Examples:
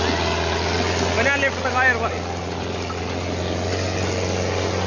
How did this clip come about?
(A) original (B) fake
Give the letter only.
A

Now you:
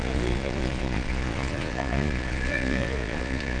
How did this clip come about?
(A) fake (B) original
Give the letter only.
A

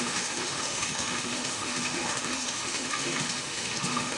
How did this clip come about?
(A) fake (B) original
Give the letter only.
A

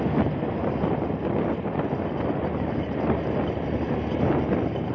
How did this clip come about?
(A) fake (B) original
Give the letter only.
B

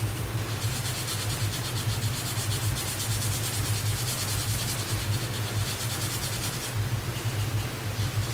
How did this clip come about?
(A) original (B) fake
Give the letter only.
A